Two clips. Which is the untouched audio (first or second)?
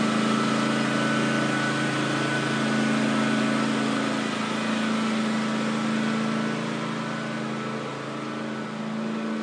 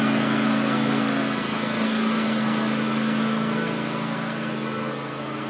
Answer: first